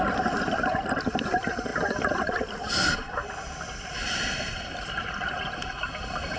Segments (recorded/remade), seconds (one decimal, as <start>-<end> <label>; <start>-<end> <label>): 0.0-1.7 recorded; 1.7-5.5 remade; 5.5-6.4 recorded